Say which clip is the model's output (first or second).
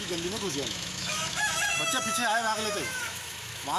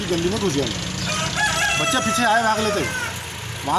first